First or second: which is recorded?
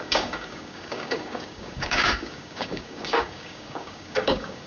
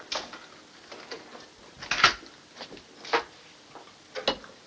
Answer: second